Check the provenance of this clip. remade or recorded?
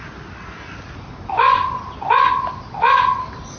recorded